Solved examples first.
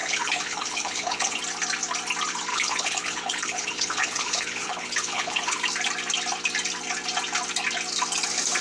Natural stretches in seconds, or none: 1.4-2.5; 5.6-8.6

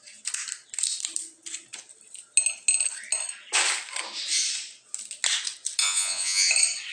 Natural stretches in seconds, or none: 0.0-5.8; 6.5-6.9

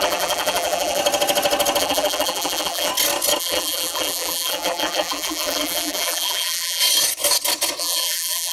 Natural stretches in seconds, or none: 1.0-1.8; 2.9-3.4; 6.8-7.8